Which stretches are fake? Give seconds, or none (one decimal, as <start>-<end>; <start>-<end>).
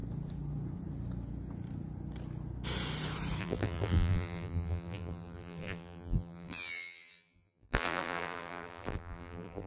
3.4-9.7